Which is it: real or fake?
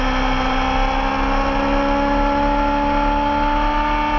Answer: real